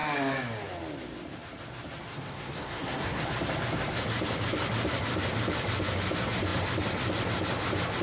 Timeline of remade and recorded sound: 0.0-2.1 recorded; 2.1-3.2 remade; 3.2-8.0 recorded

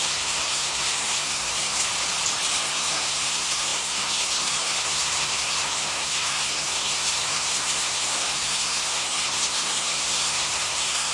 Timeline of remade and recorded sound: 0.0-1.9 remade; 1.9-2.5 recorded; 2.5-11.1 remade

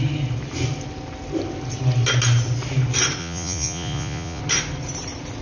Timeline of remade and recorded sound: 0.0-3.2 recorded; 3.2-4.4 remade; 4.4-5.4 recorded

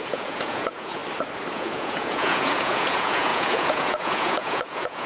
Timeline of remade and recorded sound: 0.0-1.0 remade; 1.0-1.5 recorded; 1.5-5.1 remade

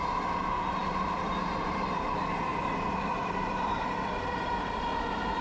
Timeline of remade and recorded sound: 0.0-0.8 recorded; 0.8-2.0 remade; 2.0-2.5 recorded; 2.5-5.4 remade